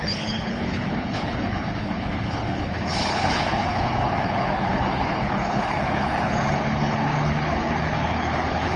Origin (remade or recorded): remade